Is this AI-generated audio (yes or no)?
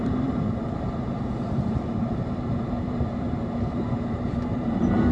yes